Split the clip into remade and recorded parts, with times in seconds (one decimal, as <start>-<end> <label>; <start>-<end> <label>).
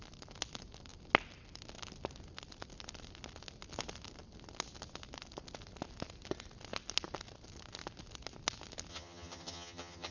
0.0-8.9 recorded; 8.9-10.1 remade